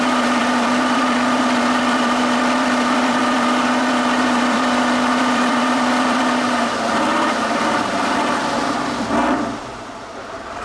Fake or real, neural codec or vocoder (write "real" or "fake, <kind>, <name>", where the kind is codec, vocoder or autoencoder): fake, vocoder, BigVGAN v2